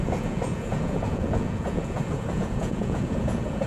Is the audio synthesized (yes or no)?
yes